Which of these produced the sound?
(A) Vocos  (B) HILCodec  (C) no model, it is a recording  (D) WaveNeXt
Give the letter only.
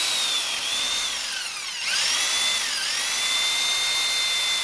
C